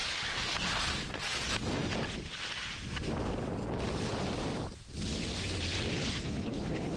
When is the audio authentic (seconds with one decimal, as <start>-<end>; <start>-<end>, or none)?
0.0-6.0